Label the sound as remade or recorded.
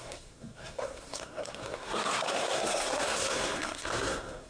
remade